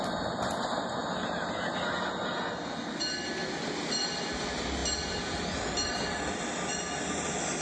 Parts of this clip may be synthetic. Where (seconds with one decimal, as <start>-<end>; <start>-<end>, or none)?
none